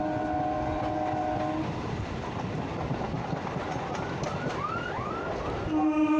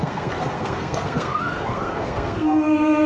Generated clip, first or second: second